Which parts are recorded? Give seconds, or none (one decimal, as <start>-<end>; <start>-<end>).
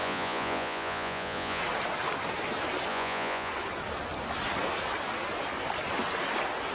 1.6-2.9; 3.5-6.7